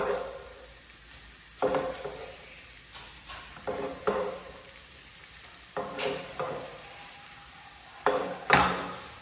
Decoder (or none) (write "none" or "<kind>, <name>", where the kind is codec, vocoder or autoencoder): none